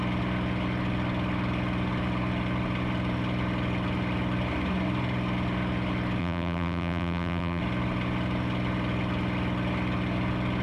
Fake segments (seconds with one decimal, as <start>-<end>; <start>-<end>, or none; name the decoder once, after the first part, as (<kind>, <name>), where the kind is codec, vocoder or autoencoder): 6.2-7.6 (vocoder, BigVGAN v2)